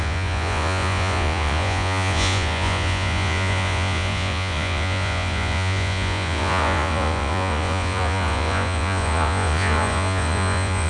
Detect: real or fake fake